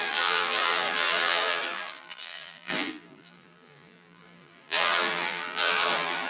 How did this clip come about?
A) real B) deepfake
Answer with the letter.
B